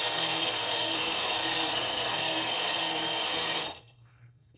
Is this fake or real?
fake